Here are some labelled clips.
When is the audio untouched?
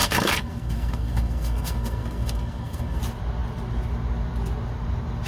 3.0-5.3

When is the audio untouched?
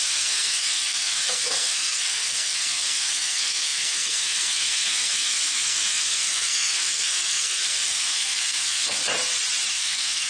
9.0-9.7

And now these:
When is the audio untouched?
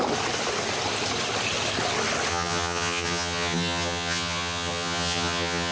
0.0-2.3